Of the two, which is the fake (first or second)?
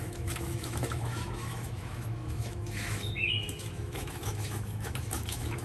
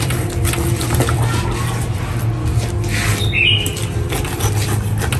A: first